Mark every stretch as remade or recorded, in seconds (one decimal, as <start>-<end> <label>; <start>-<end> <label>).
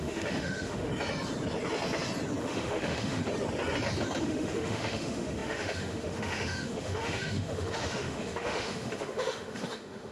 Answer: 0.0-0.9 remade; 0.9-2.4 recorded; 2.4-3.2 remade; 3.2-4.2 recorded; 4.2-10.1 remade